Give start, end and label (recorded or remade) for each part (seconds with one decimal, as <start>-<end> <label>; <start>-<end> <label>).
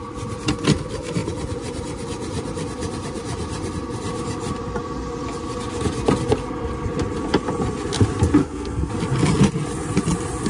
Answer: 0.0-8.4 recorded; 8.4-8.9 remade; 8.9-10.5 recorded